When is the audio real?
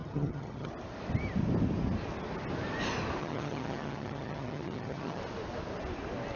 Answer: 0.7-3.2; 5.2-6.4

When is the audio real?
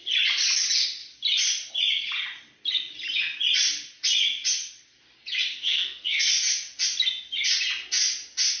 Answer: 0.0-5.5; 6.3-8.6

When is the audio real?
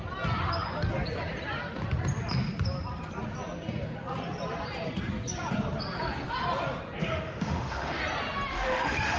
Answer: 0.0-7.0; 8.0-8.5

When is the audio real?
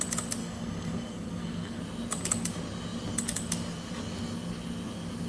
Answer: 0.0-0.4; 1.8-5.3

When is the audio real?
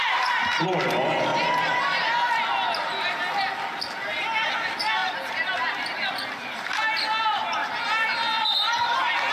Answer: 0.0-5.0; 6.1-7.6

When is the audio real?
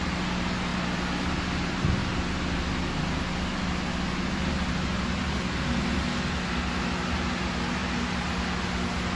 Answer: 0.0-9.2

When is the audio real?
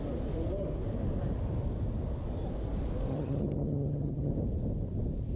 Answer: 0.0-3.1; 4.3-5.4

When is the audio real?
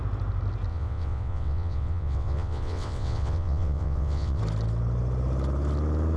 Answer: 0.0-0.7; 4.4-6.2